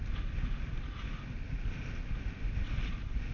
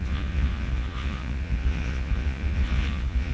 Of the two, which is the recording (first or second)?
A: first